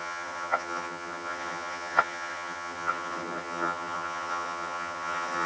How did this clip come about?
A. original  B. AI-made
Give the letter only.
B